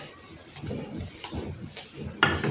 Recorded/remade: recorded